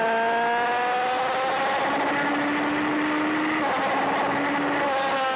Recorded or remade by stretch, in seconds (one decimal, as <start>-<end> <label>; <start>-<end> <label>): 0.0-5.4 recorded